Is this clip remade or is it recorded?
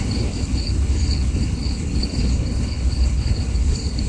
remade